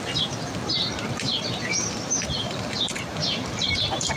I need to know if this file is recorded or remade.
remade